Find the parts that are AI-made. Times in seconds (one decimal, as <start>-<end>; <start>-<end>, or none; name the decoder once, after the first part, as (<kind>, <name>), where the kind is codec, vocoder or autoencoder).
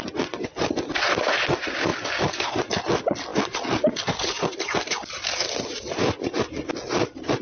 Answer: 1.9-2.6 (vocoder, BigVGAN v2)